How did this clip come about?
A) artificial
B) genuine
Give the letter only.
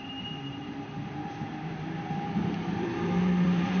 A